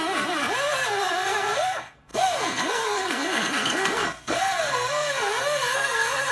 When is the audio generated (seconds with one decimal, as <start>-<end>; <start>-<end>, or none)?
0.0-0.4; 0.9-6.3